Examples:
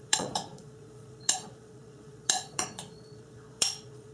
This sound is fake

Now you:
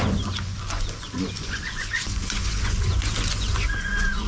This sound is fake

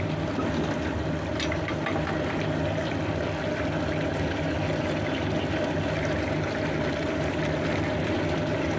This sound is real